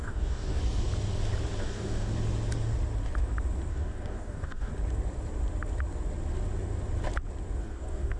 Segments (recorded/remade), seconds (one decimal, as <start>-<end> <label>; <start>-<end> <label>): 0.0-0.6 remade; 0.6-1.6 recorded; 1.6-2.1 remade; 2.1-3.7 recorded; 3.7-4.7 remade; 4.7-7.6 recorded; 7.6-8.2 remade